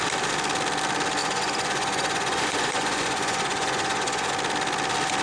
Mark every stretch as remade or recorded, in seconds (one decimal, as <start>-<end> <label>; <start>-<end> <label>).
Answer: 0.0-1.2 recorded; 1.2-4.3 remade; 4.3-5.2 recorded